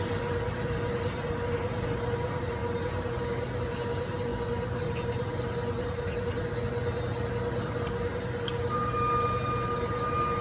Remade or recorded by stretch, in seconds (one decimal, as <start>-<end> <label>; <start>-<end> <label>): 0.0-10.4 recorded